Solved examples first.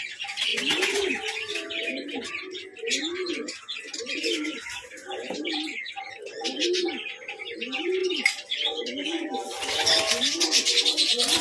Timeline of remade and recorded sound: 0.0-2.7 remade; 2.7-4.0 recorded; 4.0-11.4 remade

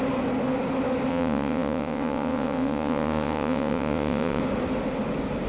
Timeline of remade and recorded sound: 0.0-1.1 recorded; 1.1-4.4 remade; 4.4-5.5 recorded